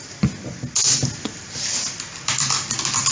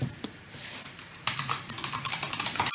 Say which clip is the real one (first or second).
first